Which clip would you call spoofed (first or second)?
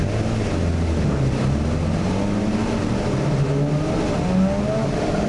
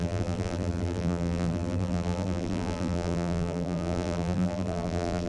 second